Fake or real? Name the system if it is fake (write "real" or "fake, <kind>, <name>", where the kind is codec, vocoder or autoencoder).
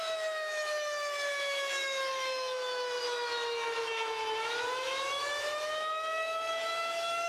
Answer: fake, autoencoder, DAC-VAE